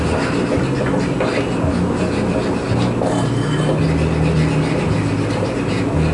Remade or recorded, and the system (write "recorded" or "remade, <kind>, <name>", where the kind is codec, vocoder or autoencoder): recorded